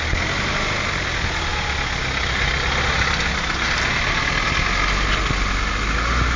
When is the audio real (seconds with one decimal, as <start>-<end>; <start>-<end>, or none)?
0.0-6.4